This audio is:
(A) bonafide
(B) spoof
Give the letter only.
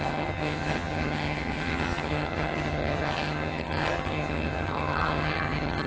B